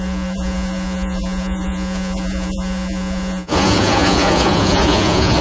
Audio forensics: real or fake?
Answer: fake